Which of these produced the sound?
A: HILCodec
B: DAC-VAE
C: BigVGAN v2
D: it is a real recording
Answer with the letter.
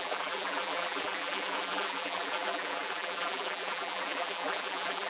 C